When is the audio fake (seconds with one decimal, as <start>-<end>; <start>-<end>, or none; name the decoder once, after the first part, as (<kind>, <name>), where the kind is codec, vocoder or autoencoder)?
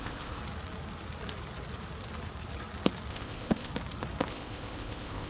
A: 0.0-0.4 (codec, ZipCodec); 3.1-3.7; 4.3-5.3